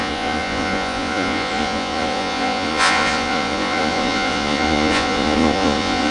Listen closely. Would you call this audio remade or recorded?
remade